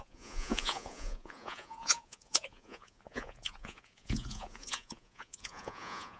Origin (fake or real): fake